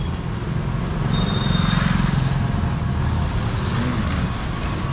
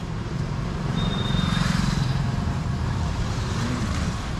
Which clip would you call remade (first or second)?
second